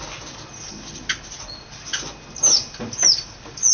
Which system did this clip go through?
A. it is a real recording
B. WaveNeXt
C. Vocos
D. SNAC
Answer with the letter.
A